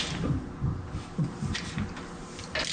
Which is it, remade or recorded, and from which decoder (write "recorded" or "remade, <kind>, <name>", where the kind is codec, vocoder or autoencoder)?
recorded